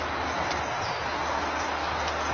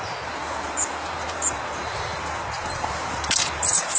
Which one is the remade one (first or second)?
second